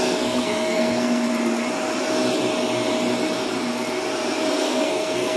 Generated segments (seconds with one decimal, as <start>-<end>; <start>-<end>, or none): 0.0-1.3; 4.5-5.4